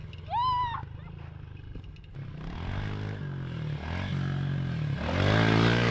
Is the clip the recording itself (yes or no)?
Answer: yes